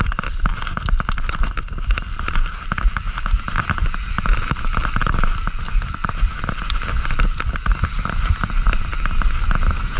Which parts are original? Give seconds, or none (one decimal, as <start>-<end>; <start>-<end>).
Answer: 0.0-10.0